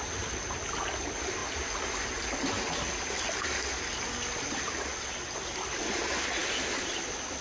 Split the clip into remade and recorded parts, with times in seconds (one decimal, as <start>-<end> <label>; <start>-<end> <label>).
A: 0.0-7.4 recorded